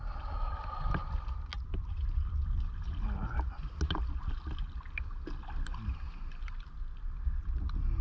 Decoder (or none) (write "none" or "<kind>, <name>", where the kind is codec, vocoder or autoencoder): none